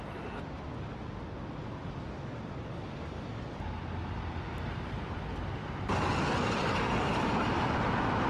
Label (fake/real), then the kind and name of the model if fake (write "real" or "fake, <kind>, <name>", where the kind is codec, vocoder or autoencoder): real